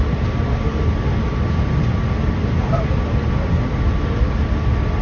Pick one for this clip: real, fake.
real